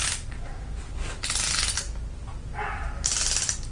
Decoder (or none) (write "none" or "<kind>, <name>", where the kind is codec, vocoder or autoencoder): none